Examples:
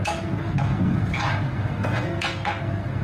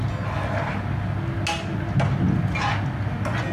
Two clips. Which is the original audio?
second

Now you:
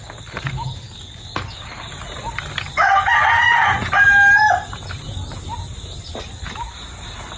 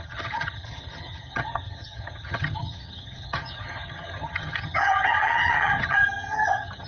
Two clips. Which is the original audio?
first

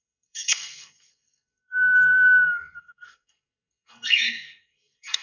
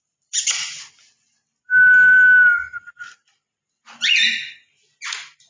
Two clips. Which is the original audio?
second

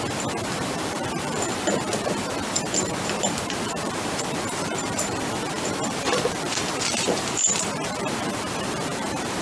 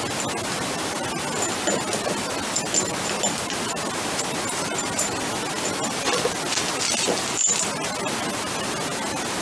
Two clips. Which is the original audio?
second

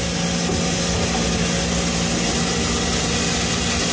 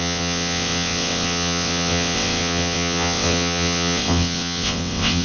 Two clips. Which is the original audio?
first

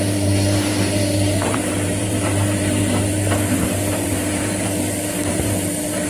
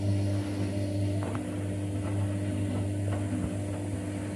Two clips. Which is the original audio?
second